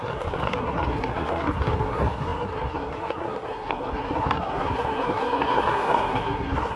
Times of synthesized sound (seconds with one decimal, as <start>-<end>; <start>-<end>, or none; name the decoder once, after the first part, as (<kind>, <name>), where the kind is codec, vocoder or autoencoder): 0.0-6.8 (codec, SNAC)